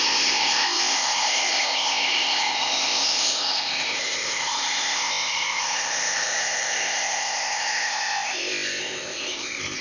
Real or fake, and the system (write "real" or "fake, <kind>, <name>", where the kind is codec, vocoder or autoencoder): fake, codec, ZipCodec